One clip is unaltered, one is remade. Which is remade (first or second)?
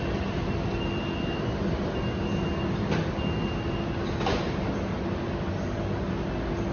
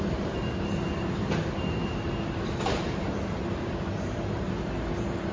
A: second